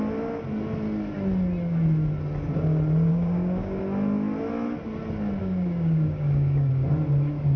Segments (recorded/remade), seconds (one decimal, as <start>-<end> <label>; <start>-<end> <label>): 0.0-3.1 recorded; 3.1-3.8 remade; 3.8-5.4 recorded; 5.4-6.7 remade; 6.7-7.6 recorded